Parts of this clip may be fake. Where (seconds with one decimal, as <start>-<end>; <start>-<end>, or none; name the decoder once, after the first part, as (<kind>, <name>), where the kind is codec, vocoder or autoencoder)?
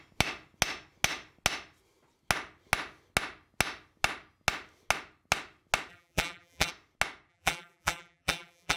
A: 5.9-6.7 (vocoder, BigVGAN v2); 7.3-8.8